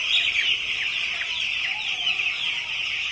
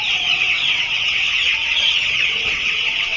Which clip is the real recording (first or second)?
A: first